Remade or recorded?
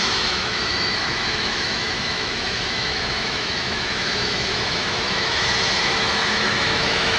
remade